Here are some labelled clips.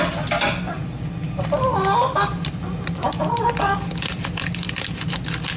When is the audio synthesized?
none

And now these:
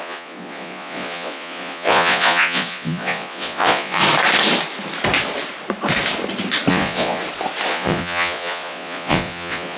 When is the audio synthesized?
0.0-4.0; 6.7-7.2; 7.7-9.8

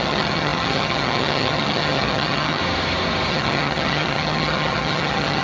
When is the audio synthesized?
0.0-2.6; 3.3-5.4